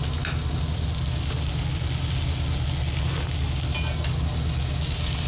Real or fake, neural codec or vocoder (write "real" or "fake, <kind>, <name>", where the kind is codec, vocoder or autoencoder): real